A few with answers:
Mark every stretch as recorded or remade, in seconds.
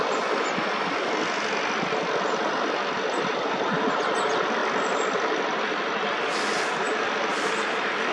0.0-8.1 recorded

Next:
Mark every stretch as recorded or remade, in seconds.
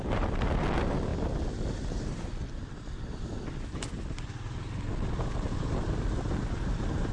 0.0-7.1 recorded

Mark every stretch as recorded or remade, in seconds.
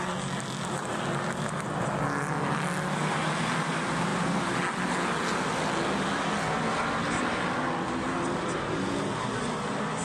0.0-10.0 recorded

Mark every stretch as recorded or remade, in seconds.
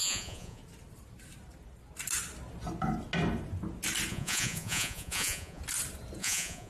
0.0-0.6 remade; 0.6-4.1 recorded; 4.1-5.6 remade; 5.6-6.2 recorded; 6.2-6.7 remade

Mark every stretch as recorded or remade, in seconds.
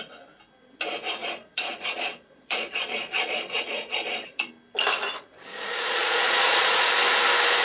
0.0-1.2 recorded; 1.2-4.5 remade; 4.5-5.5 recorded; 5.5-6.9 remade; 6.9-7.6 recorded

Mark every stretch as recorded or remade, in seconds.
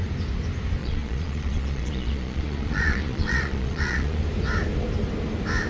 0.0-0.8 recorded; 0.8-4.2 remade; 4.2-5.7 recorded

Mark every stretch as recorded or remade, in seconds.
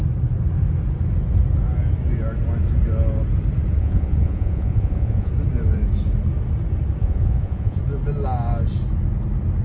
0.0-3.8 recorded; 3.8-5.3 remade; 5.3-7.0 recorded; 7.0-7.8 remade; 7.8-9.6 recorded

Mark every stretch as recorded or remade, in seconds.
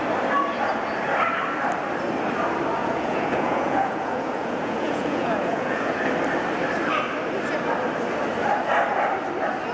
0.0-2.8 recorded; 2.8-6.0 remade; 6.0-9.7 recorded